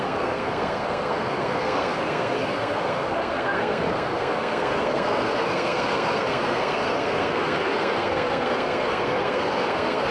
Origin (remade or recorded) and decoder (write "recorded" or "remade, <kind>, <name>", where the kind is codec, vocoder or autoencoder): remade, codec, SNAC